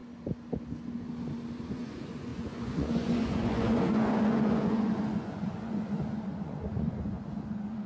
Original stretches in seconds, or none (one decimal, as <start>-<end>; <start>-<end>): 0.0-1.6